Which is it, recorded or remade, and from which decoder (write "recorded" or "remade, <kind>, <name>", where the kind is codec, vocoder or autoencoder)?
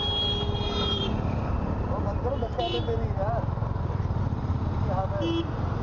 recorded